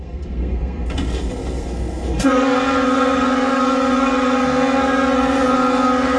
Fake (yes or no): yes